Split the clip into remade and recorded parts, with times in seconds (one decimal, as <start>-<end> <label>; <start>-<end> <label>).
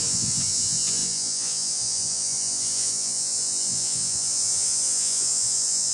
0.0-5.9 remade